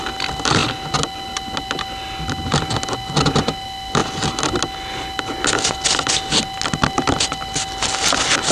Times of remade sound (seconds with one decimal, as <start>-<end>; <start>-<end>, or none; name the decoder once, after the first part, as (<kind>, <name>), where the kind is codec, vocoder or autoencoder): none

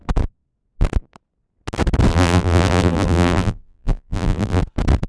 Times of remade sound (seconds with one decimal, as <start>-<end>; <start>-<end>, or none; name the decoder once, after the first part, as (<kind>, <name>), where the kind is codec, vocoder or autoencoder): 2.1-4.6 (vocoder, BigVGAN v2)